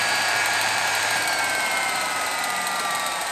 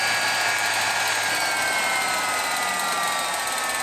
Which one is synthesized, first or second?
first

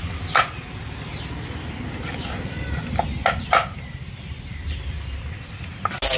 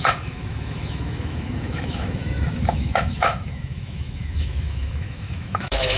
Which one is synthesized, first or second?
second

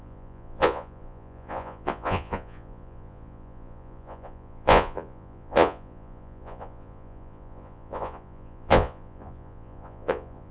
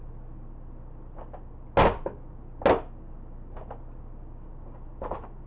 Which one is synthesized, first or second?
first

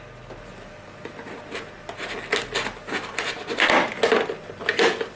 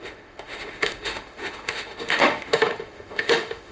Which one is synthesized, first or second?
second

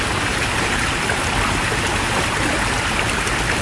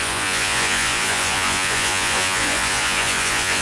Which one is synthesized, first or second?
second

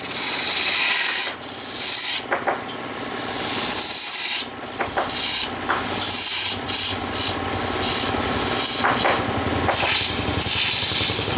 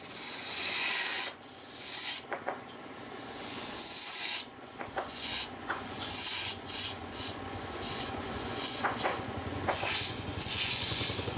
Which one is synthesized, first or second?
second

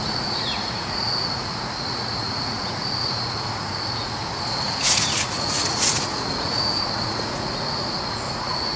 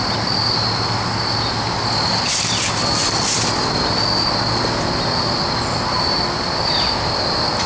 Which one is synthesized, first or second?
first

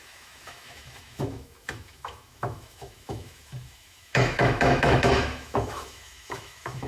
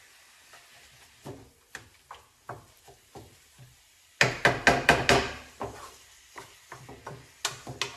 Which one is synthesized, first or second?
first